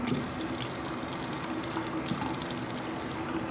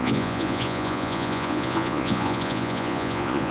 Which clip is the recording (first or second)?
first